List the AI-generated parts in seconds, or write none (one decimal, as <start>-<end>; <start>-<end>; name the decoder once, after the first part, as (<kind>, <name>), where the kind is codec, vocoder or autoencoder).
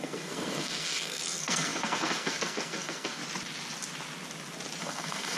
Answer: 0.0-3.2 (codec, SNAC); 4.8-5.4